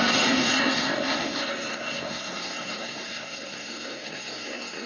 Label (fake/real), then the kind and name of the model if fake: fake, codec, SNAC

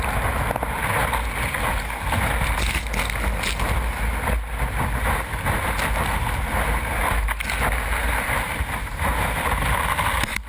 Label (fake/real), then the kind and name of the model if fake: real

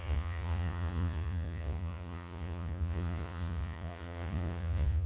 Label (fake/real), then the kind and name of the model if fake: fake, vocoder, Vocos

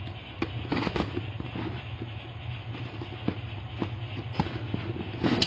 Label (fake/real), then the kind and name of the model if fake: real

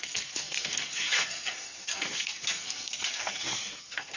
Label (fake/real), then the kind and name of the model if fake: fake, codec, SNAC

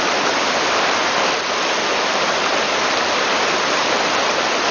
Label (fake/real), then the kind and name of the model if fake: real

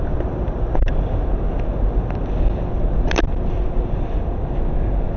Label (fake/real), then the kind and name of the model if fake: real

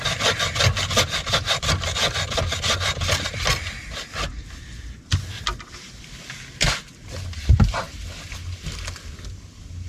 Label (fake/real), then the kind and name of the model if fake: real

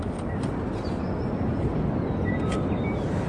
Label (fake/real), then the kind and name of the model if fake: real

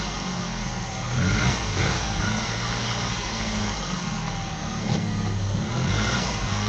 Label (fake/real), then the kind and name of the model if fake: fake, codec, SNAC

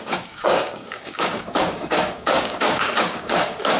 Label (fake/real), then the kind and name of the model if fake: fake, codec, DAC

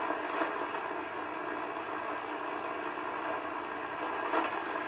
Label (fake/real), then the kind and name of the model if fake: real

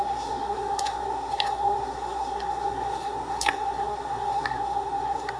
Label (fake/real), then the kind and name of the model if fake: fake, codec, SNAC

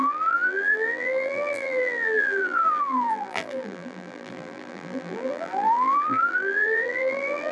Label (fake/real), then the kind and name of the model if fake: fake, vocoder, BigVGAN v2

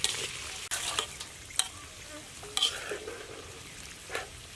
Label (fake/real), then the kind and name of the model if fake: real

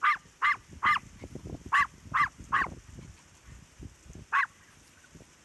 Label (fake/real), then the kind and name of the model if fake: real